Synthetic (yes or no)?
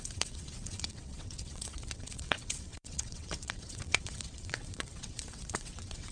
yes